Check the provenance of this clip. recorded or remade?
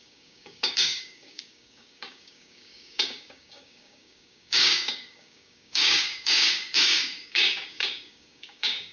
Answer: remade